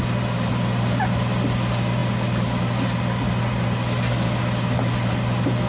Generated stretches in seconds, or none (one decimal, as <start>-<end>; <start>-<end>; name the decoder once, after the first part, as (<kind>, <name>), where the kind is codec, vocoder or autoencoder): none